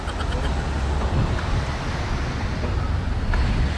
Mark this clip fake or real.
real